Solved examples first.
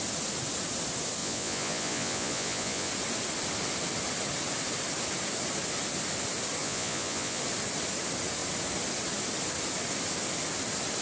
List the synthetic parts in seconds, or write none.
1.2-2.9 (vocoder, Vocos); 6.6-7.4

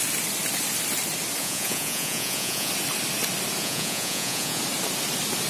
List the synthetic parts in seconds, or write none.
1.4-2.7 (vocoder, Vocos); 3.6-4.6

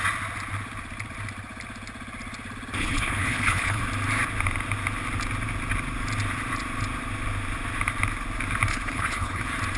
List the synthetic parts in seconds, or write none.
2.8-3.8 (codec, HILCodec); 8.7-9.4

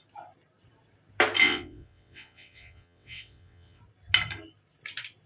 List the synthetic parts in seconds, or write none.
1.4-3.8 (vocoder, WaveNeXt)